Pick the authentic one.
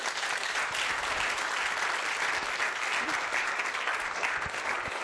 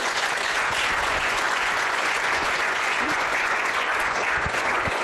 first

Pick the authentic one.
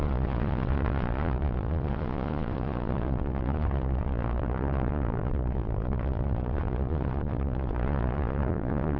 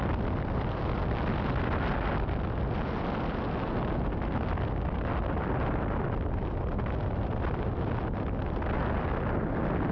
second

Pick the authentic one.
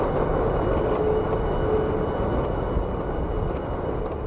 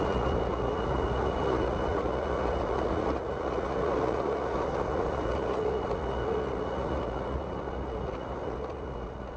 first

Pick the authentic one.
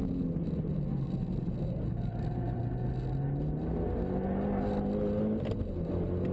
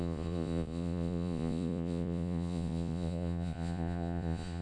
first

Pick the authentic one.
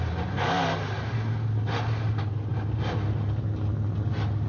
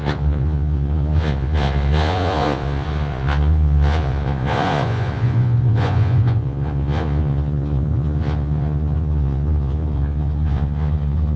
first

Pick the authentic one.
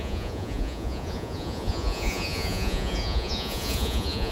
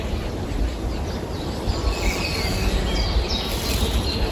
second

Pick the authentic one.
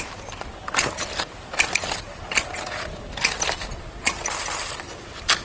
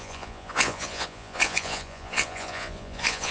first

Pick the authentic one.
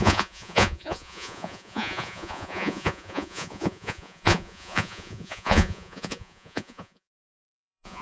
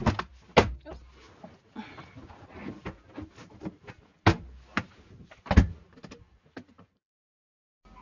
second